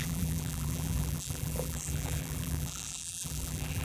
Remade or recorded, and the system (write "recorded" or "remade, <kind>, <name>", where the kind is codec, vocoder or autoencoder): remade, vocoder, BigVGAN v2